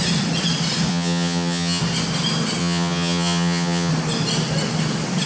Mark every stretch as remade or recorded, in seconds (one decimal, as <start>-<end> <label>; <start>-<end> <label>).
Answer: 0.0-0.9 recorded; 0.9-1.8 remade; 1.8-2.6 recorded; 2.6-3.9 remade; 3.9-5.3 recorded